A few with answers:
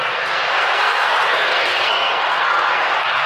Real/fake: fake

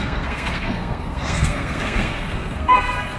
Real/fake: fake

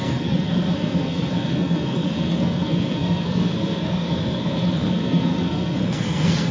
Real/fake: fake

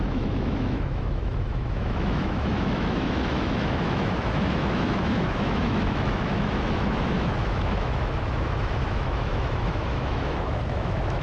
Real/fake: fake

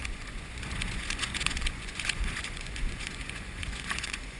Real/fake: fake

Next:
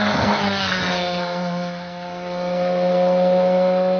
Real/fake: fake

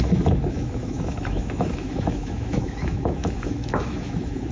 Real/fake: fake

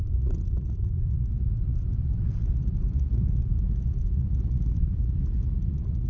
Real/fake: fake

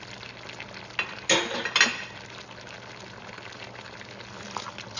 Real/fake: real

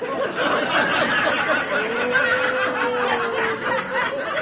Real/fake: real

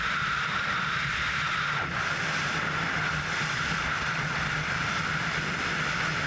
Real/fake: fake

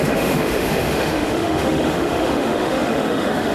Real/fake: fake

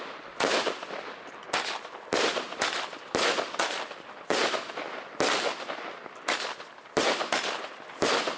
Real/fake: real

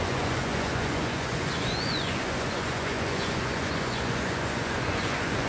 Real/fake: fake